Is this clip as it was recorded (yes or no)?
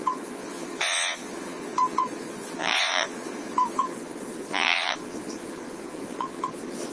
no